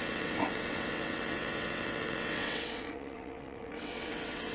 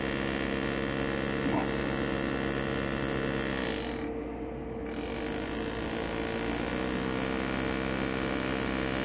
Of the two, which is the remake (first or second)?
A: first